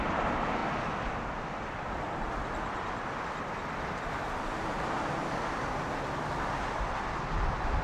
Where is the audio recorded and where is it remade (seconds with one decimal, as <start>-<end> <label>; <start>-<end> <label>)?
0.0-7.8 recorded